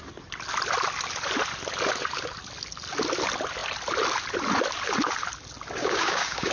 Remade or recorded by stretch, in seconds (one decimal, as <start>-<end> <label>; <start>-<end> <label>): 0.0-5.8 recorded; 5.8-6.5 remade